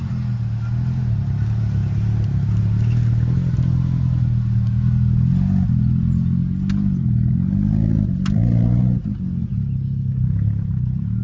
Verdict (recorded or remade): recorded